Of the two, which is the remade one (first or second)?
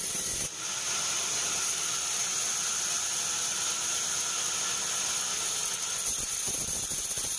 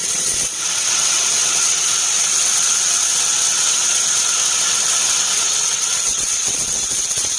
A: second